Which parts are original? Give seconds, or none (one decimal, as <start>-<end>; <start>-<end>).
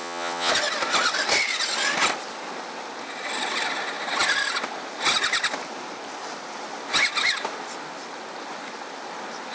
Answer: 0.5-9.5